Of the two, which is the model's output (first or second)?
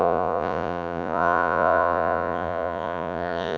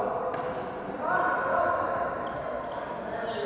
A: first